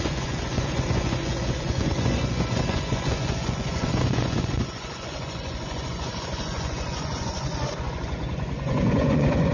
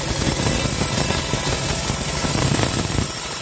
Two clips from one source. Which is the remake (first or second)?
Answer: first